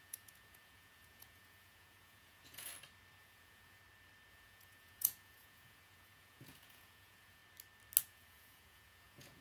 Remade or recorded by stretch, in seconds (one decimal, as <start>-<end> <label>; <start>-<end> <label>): 0.0-2.7 remade; 2.7-3.2 recorded; 3.2-3.8 remade; 3.8-4.3 recorded; 4.3-7.4 remade; 7.4-8.0 recorded; 8.0-9.4 remade